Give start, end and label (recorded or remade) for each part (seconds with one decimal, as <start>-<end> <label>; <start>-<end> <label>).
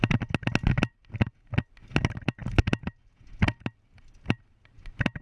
0.0-5.2 recorded